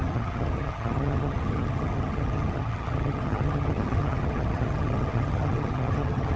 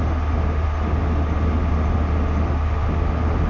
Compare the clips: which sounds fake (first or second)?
first